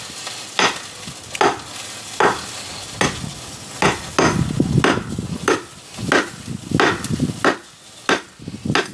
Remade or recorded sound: recorded